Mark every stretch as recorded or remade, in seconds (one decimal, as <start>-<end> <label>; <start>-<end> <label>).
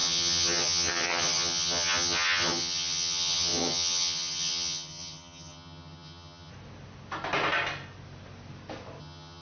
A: 0.0-6.5 remade; 6.5-9.0 recorded; 9.0-9.4 remade